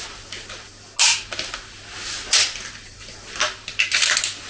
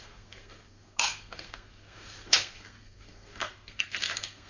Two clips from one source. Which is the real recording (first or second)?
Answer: first